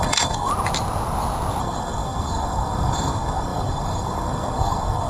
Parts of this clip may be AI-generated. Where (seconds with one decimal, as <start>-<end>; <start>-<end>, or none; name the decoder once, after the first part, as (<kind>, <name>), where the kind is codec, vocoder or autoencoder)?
0.0-0.5 (codec, SNAC); 1.6-5.1